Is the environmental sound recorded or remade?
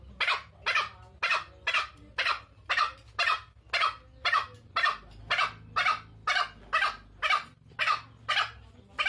recorded